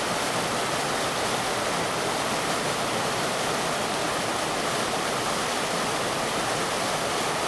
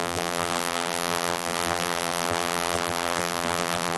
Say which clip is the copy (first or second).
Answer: second